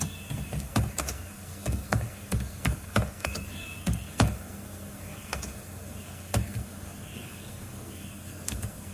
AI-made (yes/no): yes